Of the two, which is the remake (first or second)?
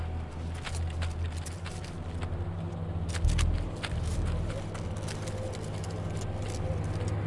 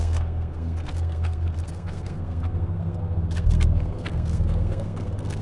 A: second